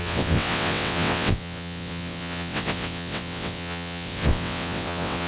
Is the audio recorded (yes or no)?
no